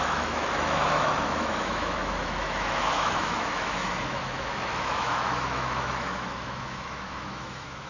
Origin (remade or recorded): remade